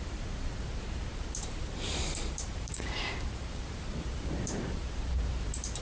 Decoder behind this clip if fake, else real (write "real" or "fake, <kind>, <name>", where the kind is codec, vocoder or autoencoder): fake, vocoder, BigVGAN v2